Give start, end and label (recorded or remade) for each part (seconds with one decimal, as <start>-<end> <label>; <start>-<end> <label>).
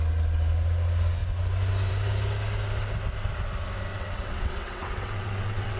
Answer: 0.0-3.9 recorded; 3.9-5.8 remade